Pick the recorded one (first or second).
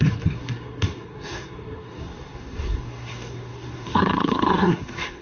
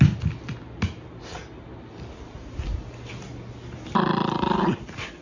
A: second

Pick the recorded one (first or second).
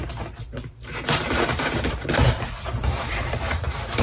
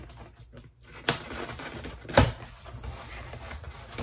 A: second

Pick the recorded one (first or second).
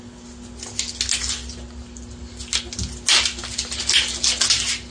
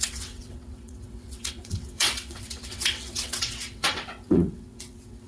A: first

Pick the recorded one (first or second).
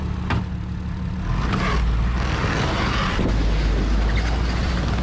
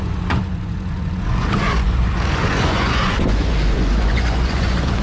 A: first